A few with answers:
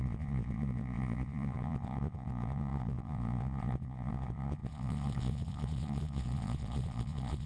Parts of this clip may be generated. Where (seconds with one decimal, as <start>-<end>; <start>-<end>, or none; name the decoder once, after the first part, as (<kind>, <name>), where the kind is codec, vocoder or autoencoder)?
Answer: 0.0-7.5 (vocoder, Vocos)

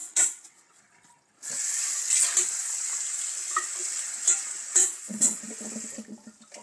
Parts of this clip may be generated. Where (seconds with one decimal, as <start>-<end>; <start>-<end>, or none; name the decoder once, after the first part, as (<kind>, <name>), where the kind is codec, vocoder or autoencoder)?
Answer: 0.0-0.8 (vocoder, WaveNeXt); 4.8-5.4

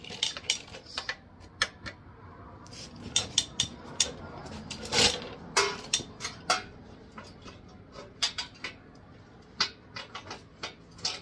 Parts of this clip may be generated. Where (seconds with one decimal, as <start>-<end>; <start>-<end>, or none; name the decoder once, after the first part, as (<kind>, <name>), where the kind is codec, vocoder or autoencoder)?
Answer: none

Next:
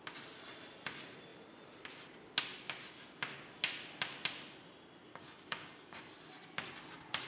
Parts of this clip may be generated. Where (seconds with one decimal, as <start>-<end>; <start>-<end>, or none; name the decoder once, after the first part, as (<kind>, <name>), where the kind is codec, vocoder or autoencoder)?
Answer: 5.1-6.0 (codec, DAC)

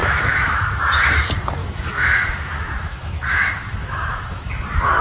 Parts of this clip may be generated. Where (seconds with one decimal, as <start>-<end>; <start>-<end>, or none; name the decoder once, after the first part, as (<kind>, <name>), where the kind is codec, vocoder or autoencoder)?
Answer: 0.0-1.0 (autoencoder, DAC-VAE); 1.6-4.6

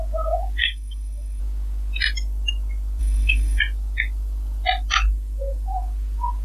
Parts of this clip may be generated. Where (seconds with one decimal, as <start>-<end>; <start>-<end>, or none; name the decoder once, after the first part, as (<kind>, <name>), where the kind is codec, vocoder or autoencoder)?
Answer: 0.6-1.4 (codec, SNAC); 3.0-3.6

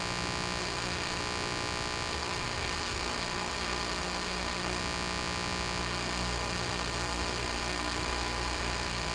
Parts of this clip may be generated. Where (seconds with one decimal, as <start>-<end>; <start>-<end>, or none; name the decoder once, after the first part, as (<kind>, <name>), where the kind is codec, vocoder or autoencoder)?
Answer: 0.6-1.2 (codec, SNAC); 2.1-4.8; 5.8-9.1